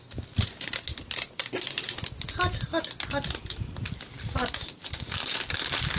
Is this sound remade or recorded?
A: recorded